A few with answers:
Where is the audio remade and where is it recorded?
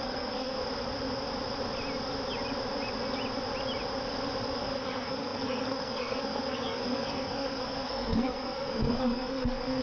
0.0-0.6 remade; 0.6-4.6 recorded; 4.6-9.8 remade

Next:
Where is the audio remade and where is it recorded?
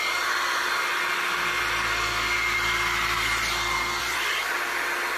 0.0-5.2 recorded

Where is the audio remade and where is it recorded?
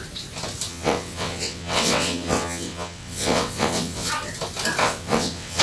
0.0-0.7 recorded; 0.7-4.1 remade; 4.1-4.8 recorded; 4.8-5.6 remade